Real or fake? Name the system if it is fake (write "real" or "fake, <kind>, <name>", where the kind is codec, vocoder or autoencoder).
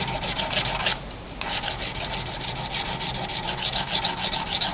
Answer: real